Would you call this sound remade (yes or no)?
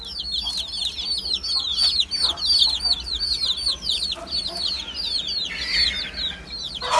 no